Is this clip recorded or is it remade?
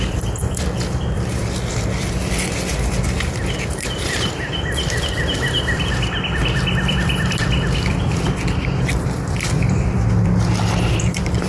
remade